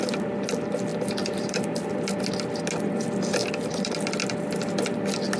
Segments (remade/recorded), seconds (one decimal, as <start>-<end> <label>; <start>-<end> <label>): 0.0-0.9 recorded; 0.9-2.2 remade; 2.2-3.4 recorded; 3.4-4.0 remade; 4.0-5.4 recorded